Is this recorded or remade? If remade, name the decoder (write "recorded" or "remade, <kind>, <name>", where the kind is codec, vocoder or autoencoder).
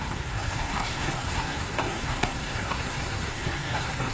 remade, codec, SNAC